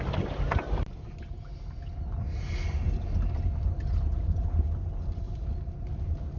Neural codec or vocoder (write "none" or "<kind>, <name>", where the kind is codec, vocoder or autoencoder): none